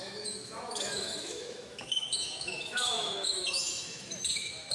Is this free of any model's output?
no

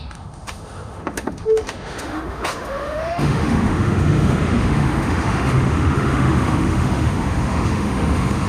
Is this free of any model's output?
no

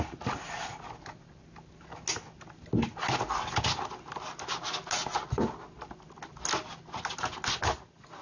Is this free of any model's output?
yes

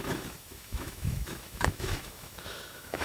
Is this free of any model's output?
no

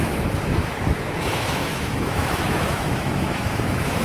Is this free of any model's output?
no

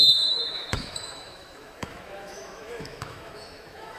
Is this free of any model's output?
no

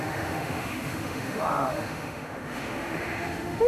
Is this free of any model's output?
no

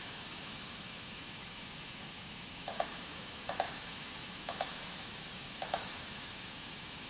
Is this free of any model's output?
no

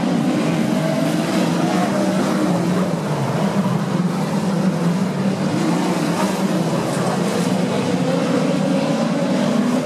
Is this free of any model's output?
yes